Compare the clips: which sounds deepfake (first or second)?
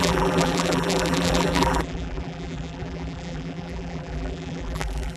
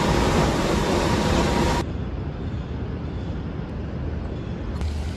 first